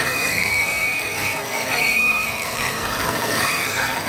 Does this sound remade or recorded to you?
remade